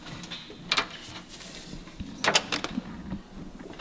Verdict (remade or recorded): recorded